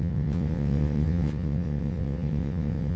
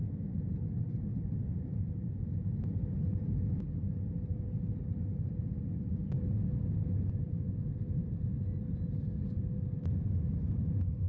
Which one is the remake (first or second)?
first